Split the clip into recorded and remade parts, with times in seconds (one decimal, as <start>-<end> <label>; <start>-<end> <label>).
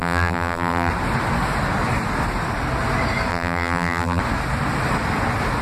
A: 0.0-0.9 remade; 0.9-3.3 recorded; 3.3-4.2 remade; 4.2-5.6 recorded